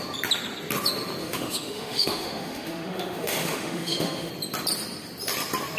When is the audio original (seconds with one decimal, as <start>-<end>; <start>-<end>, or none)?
0.0-1.2; 4.3-5.8